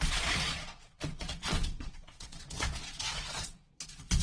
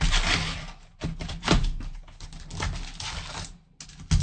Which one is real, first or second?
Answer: second